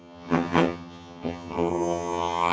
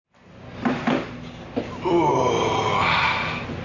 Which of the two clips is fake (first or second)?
first